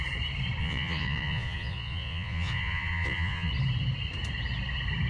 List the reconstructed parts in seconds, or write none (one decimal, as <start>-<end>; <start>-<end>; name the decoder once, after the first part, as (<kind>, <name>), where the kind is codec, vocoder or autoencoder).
0.6-3.5 (vocoder, Vocos)